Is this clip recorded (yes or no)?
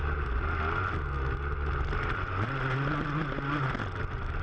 yes